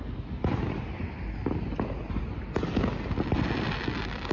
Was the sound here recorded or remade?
recorded